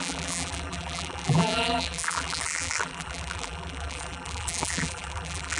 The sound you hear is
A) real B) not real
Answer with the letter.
B